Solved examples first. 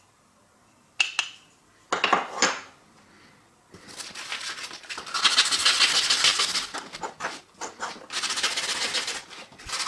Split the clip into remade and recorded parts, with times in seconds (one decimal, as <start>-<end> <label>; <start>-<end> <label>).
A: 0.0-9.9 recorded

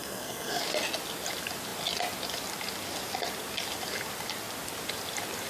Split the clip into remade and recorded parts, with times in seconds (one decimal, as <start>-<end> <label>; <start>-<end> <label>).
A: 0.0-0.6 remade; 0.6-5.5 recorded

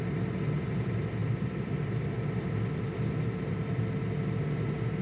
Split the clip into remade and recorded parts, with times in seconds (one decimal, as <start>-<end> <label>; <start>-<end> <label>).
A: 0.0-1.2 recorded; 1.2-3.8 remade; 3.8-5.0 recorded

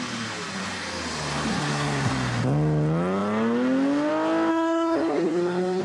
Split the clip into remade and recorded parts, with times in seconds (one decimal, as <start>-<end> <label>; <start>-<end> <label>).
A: 0.0-1.5 recorded; 1.5-2.1 remade; 2.1-4.5 recorded; 4.5-5.8 remade